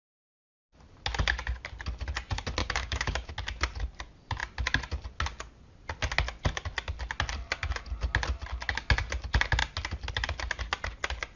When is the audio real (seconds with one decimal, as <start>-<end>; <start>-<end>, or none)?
0.0-2.6; 3.3-11.4